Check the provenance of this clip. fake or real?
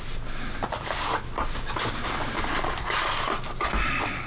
real